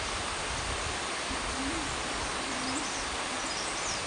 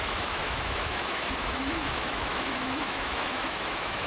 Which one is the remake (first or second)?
second